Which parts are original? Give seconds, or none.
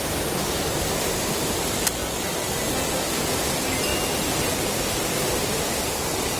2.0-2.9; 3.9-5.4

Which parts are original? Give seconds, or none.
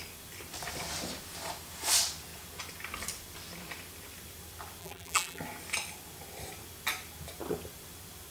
0.0-4.8; 5.4-8.3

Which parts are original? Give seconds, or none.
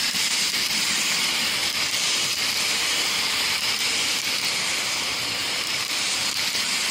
none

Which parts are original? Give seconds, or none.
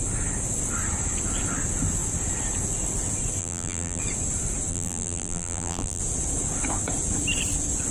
0.0-3.4; 4.0-4.7; 6.0-7.9